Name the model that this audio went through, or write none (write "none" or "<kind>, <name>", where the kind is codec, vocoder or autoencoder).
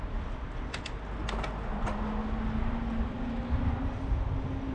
none